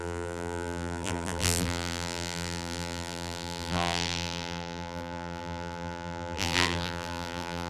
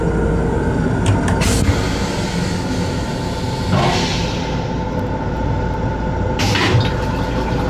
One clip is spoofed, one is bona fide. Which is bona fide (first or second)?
second